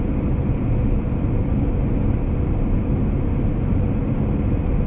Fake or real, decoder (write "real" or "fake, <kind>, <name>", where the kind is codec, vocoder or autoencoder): real